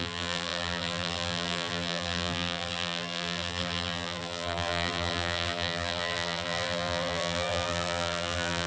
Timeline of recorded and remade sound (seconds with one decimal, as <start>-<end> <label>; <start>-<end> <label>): 0.0-8.7 remade